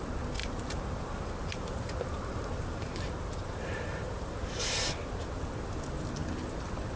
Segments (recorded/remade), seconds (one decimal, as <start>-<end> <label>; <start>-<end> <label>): 0.0-0.4 recorded; 0.4-4.6 remade; 4.6-7.0 recorded